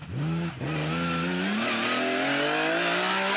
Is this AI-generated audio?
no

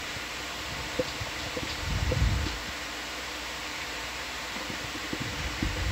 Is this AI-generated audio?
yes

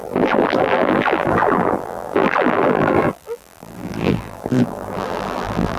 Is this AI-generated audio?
yes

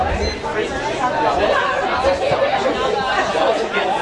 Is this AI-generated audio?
no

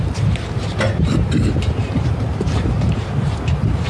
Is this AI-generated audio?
yes